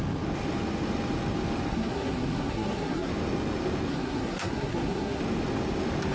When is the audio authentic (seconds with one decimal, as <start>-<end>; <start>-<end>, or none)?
0.0-1.7; 3.1-3.9; 5.2-6.1